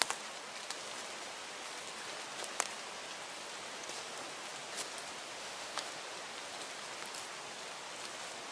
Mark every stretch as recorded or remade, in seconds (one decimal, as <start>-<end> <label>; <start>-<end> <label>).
0.0-5.4 recorded; 5.4-5.9 remade; 5.9-8.5 recorded